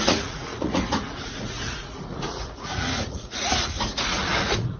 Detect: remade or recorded remade